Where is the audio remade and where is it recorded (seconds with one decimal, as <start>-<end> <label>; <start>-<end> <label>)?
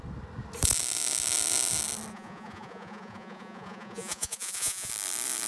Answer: 0.0-2.1 recorded; 2.1-4.9 remade; 4.9-5.5 recorded